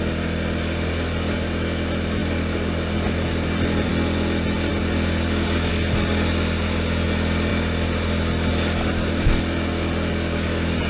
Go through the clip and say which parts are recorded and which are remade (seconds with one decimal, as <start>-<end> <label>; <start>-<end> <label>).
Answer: 0.0-10.9 recorded

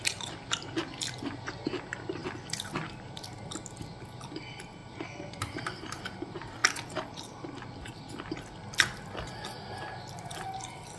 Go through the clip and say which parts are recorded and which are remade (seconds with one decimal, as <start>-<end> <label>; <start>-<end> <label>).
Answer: 0.0-11.0 recorded